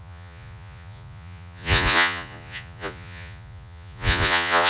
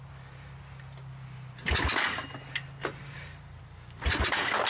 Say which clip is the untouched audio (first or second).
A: second